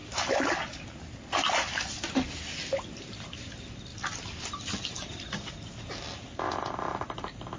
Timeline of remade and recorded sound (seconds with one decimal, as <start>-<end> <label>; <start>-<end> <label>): 0.0-2.1 remade; 2.1-3.9 recorded; 3.9-6.2 remade; 6.2-7.6 recorded